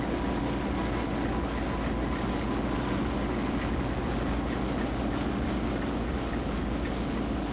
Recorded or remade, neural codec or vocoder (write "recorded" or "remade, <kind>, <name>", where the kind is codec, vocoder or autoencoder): recorded